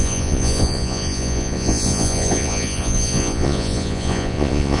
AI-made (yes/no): yes